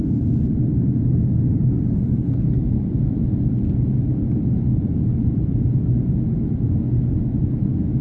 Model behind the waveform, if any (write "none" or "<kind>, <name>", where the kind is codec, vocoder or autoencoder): none